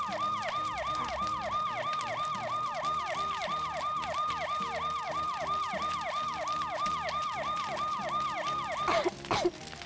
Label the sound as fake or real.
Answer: real